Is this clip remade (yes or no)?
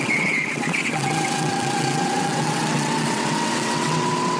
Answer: yes